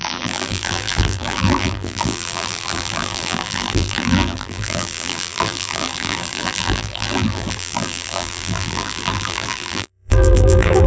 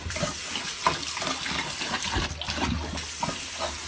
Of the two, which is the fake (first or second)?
first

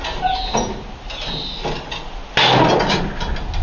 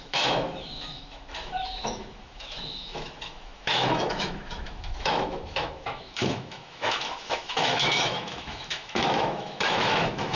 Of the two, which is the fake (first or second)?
second